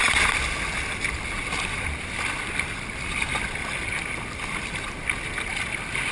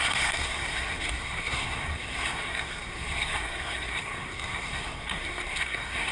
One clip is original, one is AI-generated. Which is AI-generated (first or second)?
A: second